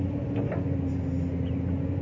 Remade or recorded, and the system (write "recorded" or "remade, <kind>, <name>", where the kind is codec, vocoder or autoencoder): recorded